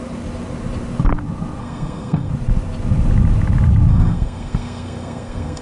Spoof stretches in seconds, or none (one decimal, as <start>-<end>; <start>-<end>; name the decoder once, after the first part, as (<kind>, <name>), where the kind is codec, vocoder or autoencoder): 1.6-2.3 (codec, SNAC); 3.9-5.6